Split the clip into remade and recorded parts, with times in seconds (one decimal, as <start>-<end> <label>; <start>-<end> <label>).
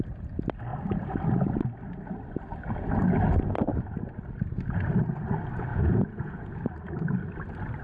0.0-5.7 recorded; 5.7-6.6 remade; 6.6-7.8 recorded